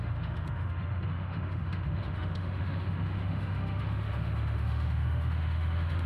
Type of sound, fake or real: fake